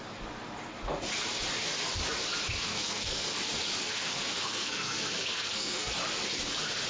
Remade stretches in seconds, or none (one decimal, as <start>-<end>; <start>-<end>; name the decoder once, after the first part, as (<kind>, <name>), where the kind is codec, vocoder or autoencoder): 2.7-3.4 (codec, SNAC); 3.9-5.9